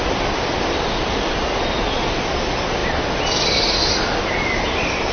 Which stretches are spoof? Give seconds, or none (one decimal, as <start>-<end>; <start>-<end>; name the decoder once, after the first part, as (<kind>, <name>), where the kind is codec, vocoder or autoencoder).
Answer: none